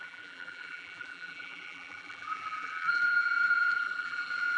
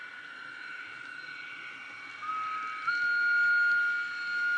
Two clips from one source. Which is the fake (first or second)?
first